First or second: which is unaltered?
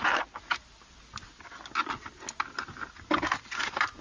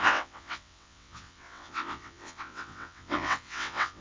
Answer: first